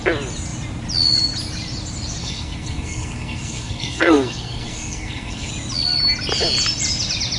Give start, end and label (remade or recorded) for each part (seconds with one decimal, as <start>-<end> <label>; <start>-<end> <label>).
0.0-2.2 recorded; 2.2-5.5 remade; 5.5-7.4 recorded

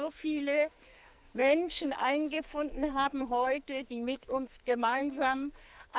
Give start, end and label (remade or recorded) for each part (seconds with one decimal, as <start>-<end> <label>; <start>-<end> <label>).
0.0-6.0 remade

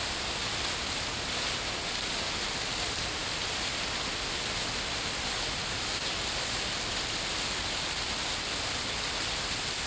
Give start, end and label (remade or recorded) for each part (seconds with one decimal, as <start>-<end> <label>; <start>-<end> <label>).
0.0-9.9 recorded